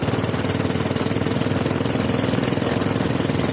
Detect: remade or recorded recorded